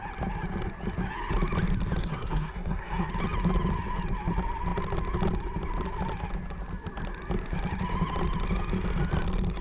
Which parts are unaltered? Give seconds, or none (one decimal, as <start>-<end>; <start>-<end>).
0.0-2.0; 3.1-9.6